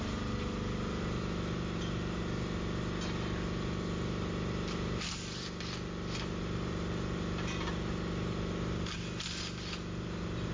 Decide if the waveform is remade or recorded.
recorded